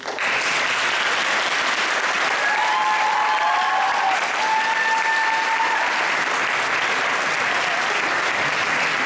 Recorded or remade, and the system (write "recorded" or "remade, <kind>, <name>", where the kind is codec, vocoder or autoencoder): recorded